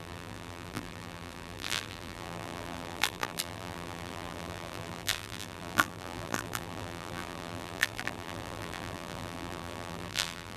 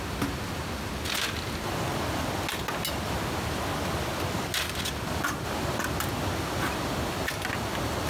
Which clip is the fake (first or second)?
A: first